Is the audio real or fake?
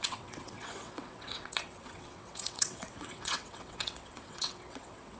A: fake